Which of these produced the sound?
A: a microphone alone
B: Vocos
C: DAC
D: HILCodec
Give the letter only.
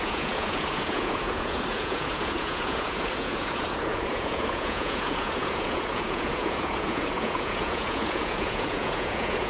B